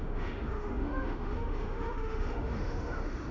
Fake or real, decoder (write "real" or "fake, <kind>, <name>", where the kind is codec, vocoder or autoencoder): fake, autoencoder, DAC-VAE